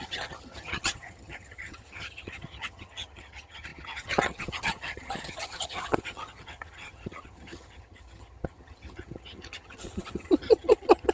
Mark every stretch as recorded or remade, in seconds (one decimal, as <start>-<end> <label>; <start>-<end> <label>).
0.0-11.1 remade